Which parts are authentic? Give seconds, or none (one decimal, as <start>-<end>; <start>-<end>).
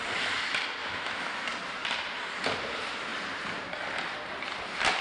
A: 0.0-0.8; 1.5-5.0